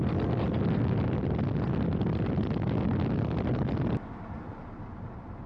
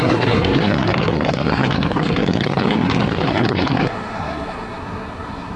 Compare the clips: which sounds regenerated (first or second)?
second